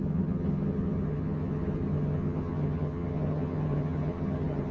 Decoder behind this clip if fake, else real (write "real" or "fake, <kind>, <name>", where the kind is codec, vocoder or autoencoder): fake, vocoder, HiFi-GAN